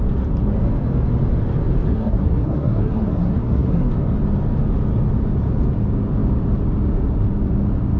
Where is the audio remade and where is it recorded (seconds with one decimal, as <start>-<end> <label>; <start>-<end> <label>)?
0.0-1.9 recorded; 1.9-3.9 remade; 3.9-8.0 recorded